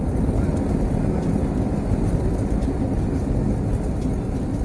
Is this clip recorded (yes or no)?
yes